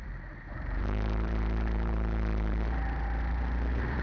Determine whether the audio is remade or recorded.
remade